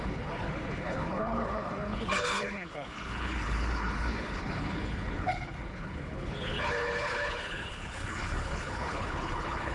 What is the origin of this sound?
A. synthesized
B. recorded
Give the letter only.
A